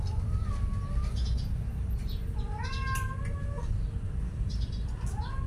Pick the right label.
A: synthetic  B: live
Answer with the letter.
B